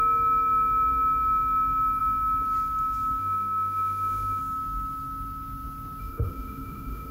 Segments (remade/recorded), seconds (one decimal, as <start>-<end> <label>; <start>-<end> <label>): 0.0-3.2 recorded; 3.2-4.4 remade; 4.4-6.0 recorded; 6.0-7.1 remade